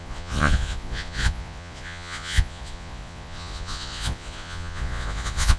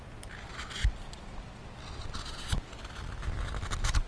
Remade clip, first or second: first